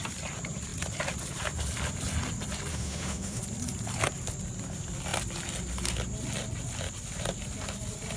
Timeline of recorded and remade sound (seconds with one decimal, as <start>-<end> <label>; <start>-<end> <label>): 0.0-2.7 recorded; 2.7-3.4 remade; 3.4-8.2 recorded